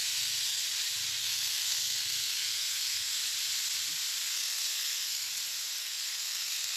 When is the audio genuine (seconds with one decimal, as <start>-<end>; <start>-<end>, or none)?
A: 0.6-1.2; 3.2-4.2; 5.3-5.8